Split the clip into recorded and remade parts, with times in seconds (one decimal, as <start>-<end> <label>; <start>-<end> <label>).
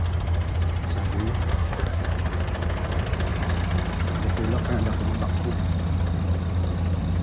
0.0-1.5 recorded; 1.5-2.0 remade; 2.0-7.2 recorded